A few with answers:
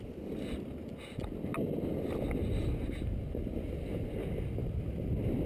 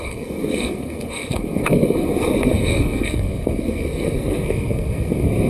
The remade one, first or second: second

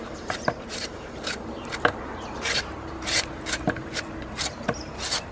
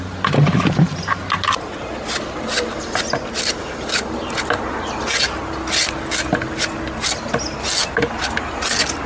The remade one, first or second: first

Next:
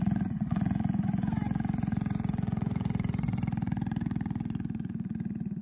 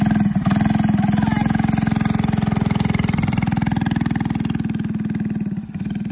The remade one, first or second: first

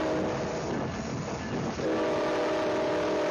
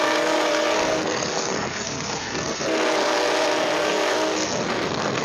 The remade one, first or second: second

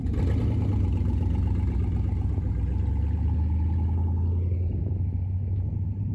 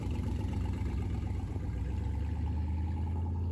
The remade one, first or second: second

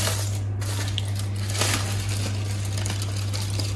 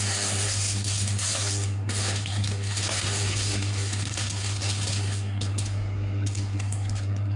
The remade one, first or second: second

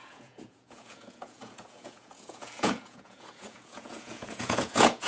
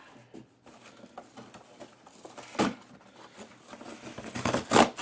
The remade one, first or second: first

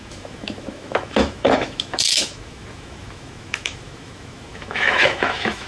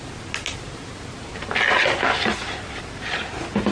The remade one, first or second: first